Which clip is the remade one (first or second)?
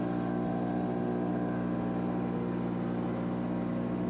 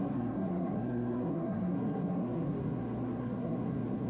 second